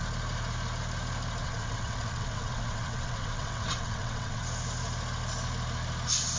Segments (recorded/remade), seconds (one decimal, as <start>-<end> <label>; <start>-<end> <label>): 0.0-1.4 recorded; 1.4-4.4 remade; 4.4-6.4 recorded